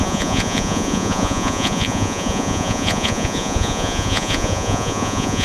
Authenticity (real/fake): fake